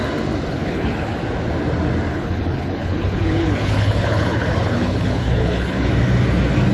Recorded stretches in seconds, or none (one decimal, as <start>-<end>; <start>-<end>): 0.0-0.5; 1.2-2.1; 5.9-6.7